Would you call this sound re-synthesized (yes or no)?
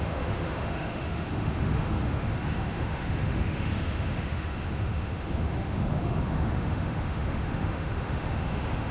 yes